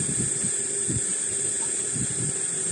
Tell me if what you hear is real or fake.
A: real